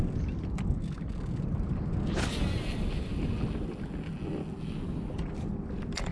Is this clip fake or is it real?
real